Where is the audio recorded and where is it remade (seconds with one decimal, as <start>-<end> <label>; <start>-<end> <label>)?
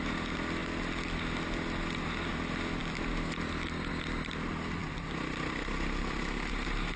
0.0-7.0 recorded